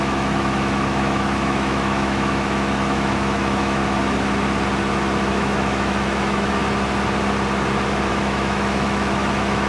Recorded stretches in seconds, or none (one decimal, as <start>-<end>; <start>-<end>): 3.8-5.3; 6.6-8.1